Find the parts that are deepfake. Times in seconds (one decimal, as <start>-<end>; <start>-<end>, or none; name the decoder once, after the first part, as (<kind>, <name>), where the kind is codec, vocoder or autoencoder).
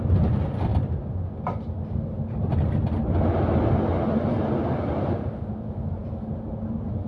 none